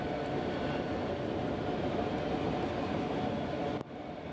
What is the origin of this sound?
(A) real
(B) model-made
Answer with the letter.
A